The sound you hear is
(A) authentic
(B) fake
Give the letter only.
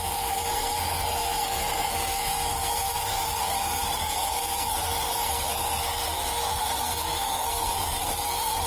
B